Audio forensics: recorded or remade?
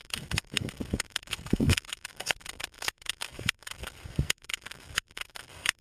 remade